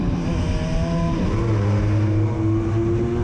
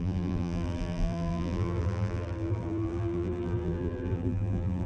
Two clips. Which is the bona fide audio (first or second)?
first